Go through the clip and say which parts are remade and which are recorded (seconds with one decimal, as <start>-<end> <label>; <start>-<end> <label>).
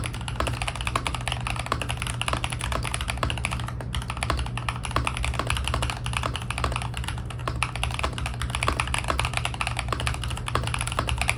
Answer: 0.0-11.4 recorded